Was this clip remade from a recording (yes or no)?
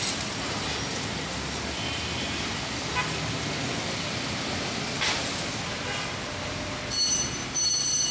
no